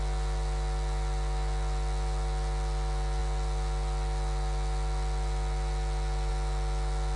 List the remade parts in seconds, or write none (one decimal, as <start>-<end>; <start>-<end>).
none